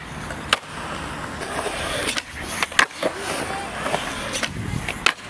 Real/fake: real